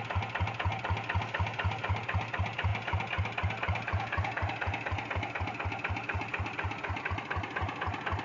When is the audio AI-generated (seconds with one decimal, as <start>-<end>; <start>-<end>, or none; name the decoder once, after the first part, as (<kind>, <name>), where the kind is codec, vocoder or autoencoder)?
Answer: none